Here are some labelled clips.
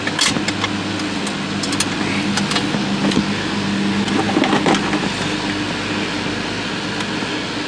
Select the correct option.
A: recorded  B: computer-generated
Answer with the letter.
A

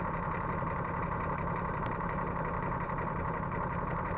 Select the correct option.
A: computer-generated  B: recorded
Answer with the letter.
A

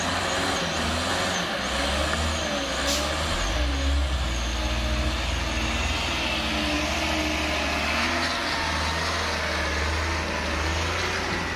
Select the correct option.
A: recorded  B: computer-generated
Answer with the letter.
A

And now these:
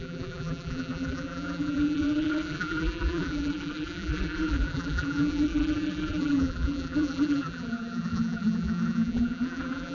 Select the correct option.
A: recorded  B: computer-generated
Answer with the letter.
B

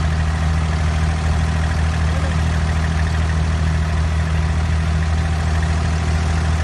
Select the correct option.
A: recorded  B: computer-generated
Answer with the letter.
A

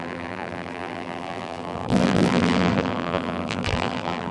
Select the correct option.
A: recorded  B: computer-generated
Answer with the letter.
B